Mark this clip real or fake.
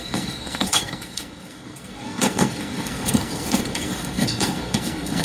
fake